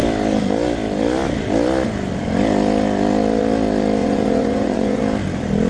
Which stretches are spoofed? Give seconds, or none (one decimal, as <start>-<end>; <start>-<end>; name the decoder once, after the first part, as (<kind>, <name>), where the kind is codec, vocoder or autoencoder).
4.0-5.0 (vocoder, Vocos)